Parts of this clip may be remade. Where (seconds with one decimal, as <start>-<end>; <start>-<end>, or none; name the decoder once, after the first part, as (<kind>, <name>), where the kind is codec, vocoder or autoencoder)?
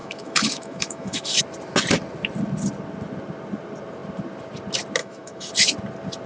0.0-1.4 (autoencoder, DAC-VAE); 5.0-5.5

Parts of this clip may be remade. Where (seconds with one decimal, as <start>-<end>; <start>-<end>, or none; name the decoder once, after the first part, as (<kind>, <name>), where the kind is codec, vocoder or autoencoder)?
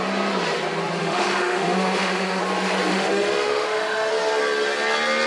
1.0-2.4 (autoencoder, DAC-VAE); 2.9-4.1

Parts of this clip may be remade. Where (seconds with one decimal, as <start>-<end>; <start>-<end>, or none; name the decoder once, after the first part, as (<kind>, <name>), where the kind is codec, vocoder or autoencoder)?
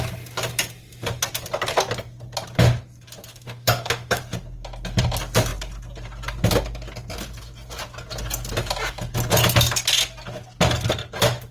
3.3-4.2 (autoencoder, DAC-VAE)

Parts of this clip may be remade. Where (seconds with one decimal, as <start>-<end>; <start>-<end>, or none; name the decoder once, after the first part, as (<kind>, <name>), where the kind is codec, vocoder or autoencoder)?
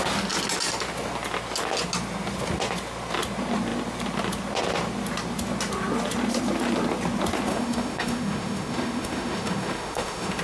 7.5-10.4 (autoencoder, DAC-VAE)